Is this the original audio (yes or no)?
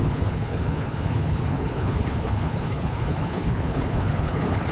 no